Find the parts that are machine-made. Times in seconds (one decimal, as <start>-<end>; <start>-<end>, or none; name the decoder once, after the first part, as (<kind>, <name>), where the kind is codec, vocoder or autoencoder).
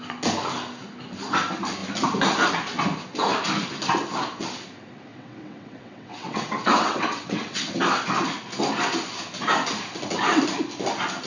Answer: 5.1-7.7 (vocoder, WaveNeXt)